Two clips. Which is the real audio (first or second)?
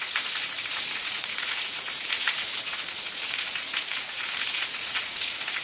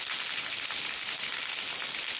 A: second